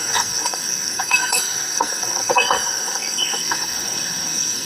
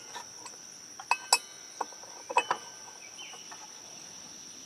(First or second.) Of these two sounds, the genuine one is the second